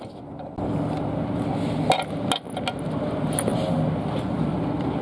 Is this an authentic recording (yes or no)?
yes